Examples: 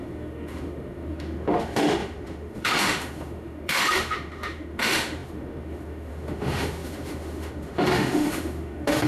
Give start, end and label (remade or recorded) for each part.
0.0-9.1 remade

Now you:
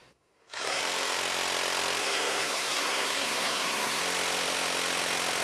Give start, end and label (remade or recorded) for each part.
0.0-0.8 remade; 0.8-2.0 recorded; 2.0-4.0 remade; 4.0-5.4 recorded

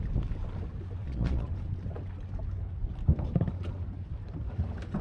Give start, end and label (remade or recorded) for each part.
0.0-1.0 recorded; 1.0-1.5 remade; 1.5-5.0 recorded

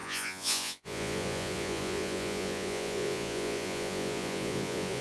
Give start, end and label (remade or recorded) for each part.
0.0-5.0 remade

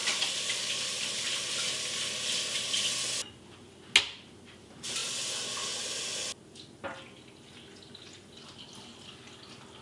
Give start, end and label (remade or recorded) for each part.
0.0-9.8 recorded

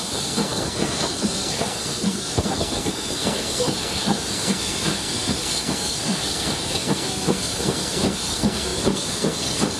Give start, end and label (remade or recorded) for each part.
0.0-9.8 remade

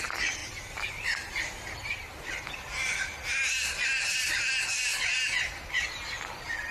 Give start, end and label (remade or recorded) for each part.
0.0-6.7 recorded

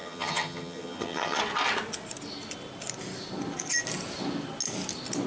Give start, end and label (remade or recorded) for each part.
0.0-1.4 remade; 1.4-5.3 recorded